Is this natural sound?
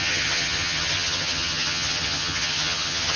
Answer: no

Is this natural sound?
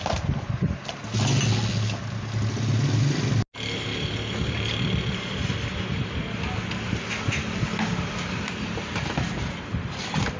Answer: yes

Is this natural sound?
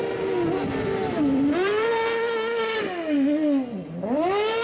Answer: yes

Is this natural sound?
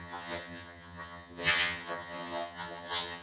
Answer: no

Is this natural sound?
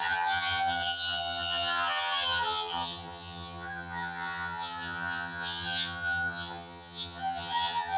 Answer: no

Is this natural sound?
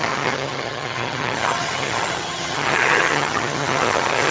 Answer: no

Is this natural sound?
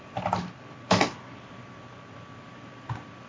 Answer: yes